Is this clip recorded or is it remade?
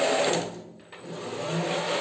recorded